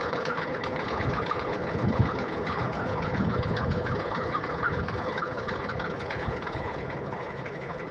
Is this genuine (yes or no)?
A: no